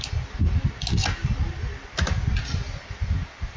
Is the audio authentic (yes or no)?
yes